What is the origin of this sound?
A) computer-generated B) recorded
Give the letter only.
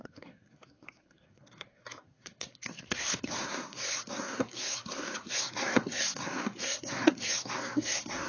A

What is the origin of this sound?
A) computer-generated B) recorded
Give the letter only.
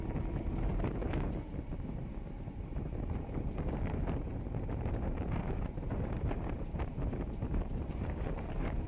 A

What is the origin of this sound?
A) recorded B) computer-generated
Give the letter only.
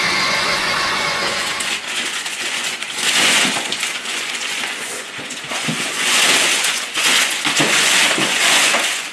B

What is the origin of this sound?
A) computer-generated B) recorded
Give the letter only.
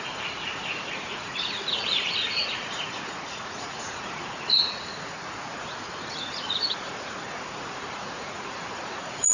A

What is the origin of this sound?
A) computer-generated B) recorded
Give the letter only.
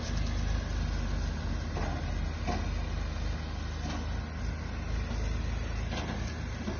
B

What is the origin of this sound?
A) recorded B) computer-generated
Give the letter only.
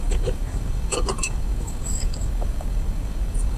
B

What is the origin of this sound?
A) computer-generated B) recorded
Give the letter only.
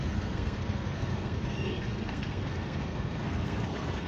A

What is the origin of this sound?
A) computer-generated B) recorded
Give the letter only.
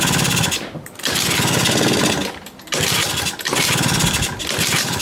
B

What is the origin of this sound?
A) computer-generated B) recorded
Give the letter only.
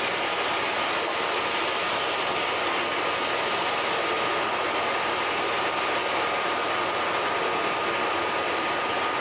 B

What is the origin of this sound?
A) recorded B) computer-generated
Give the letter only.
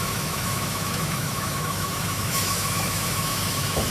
B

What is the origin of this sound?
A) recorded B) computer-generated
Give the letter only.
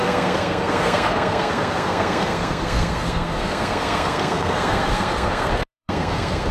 B